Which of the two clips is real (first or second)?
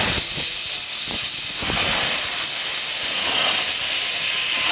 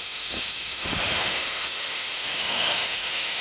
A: first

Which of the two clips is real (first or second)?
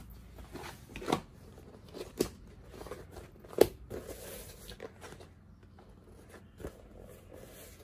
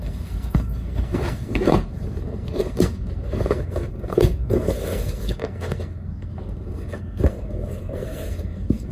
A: first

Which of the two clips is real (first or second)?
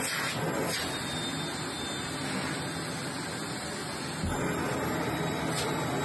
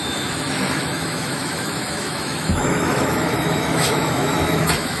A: first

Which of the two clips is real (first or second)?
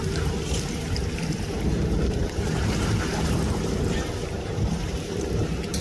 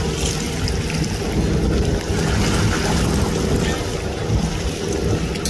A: second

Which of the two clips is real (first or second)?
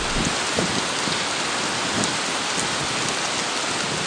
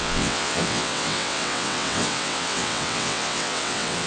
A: first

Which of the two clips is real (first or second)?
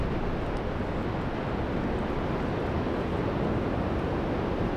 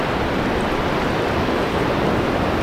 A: first